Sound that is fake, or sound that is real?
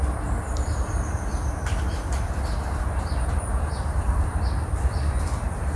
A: fake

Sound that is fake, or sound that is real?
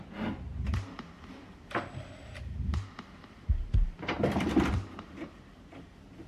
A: fake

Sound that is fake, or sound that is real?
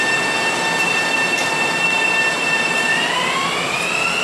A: real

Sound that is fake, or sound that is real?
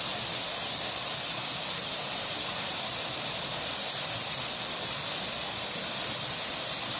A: fake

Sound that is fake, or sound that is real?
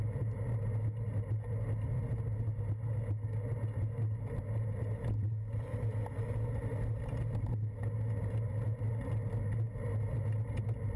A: real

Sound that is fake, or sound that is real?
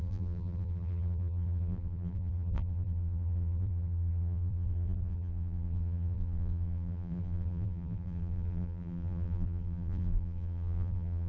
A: fake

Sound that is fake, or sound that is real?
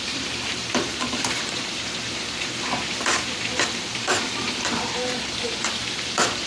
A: fake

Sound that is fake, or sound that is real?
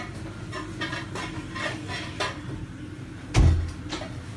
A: real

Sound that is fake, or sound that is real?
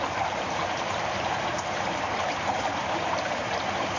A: fake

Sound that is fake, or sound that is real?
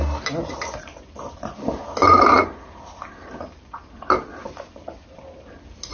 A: real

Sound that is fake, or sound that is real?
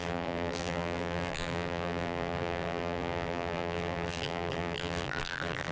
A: fake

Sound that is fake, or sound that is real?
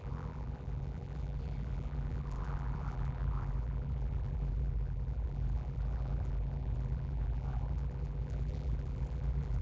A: fake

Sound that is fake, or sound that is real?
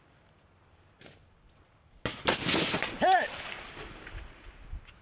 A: real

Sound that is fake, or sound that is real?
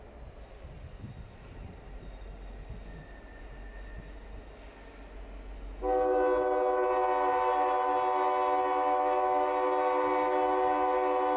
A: real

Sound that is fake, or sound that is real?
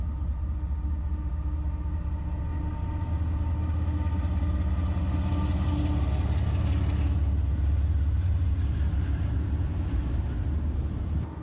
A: real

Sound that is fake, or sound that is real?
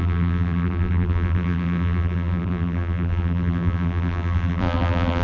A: fake